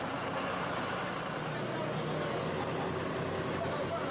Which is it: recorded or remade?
recorded